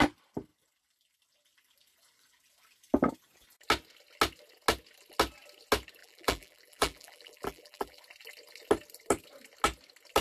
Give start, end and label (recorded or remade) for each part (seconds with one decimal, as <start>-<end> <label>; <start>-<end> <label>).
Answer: 0.0-6.0 recorded; 6.0-8.0 remade; 8.0-10.2 recorded